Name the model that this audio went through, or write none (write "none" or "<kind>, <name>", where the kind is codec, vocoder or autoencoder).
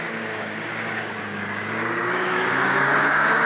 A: codec, DAC